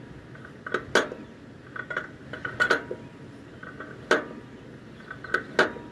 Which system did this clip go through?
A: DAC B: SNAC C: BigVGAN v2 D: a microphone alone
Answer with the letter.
D